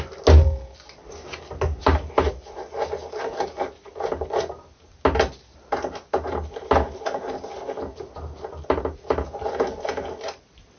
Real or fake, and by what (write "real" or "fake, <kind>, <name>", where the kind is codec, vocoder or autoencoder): real